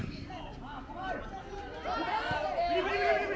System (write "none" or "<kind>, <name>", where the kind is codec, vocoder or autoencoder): none